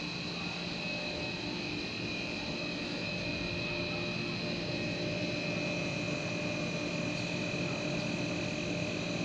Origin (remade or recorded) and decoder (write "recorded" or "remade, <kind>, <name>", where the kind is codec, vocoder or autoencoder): recorded